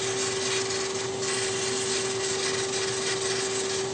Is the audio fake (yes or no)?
no